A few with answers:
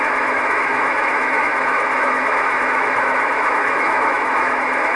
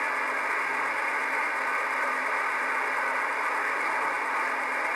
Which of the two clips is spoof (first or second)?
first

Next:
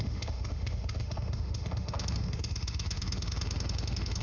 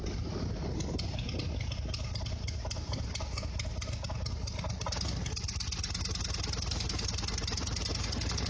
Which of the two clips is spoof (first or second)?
first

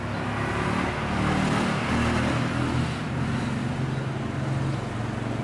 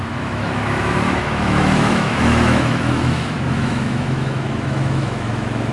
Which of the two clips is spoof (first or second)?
second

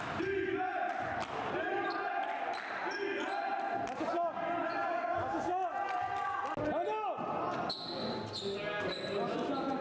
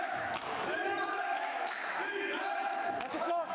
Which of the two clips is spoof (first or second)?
second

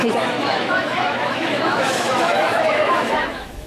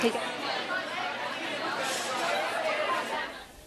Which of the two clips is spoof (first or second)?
first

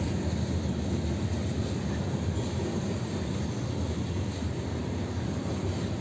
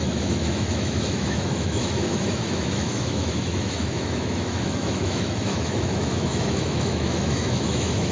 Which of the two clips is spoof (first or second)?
second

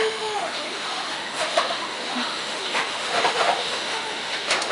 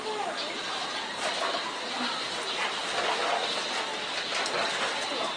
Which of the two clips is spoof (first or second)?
first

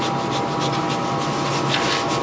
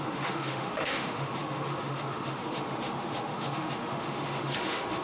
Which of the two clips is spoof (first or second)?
second